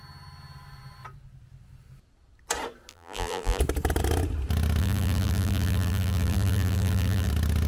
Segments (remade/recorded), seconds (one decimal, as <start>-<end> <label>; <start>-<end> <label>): 0.0-2.9 recorded; 2.9-3.6 remade; 3.6-4.8 recorded; 4.8-7.3 remade; 7.3-7.7 recorded